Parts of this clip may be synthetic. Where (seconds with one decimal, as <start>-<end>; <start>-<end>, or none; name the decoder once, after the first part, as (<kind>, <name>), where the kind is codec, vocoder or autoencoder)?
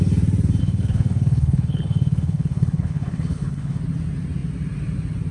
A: 0.6-3.8 (codec, HILCodec)